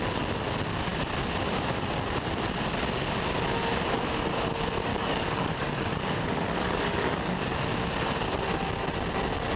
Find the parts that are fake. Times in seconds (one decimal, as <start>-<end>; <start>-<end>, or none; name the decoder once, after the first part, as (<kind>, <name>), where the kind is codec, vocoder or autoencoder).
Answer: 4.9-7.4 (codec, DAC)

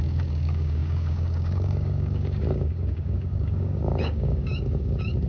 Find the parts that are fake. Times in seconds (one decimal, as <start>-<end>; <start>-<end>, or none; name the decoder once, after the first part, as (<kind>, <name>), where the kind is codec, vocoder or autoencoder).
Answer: 0.0-5.3 (codec, DAC)

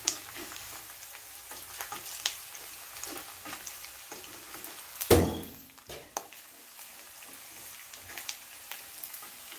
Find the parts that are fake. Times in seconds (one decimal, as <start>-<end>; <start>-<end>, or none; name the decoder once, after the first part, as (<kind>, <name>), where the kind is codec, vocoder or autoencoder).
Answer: 0.0-0.8 (codec, DAC); 4.9-6.9; 8.7-9.6

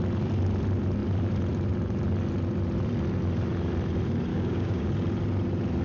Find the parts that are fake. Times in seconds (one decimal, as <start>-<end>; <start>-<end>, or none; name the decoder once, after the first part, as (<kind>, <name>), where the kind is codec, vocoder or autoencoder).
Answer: 4.3-4.9 (codec, DAC)

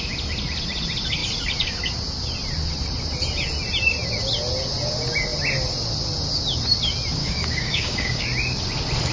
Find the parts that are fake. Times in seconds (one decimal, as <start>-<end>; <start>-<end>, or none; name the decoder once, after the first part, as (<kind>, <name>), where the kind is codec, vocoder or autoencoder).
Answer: 7.2-8.2 (codec, DAC)

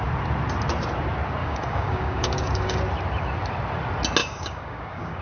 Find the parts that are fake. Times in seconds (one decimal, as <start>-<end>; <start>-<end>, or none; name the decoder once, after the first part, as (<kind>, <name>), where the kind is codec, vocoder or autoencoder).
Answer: 1.4-2.8 (codec, DAC); 4.2-5.2